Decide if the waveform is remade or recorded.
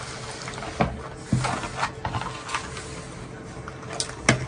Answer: recorded